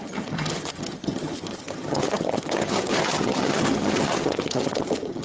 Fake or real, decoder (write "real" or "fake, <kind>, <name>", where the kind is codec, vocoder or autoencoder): fake, vocoder, HiFi-GAN